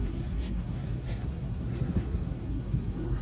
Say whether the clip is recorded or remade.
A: remade